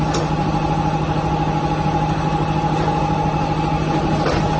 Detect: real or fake real